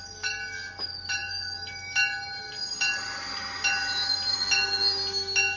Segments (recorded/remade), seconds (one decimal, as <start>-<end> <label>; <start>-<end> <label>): 0.0-5.6 recorded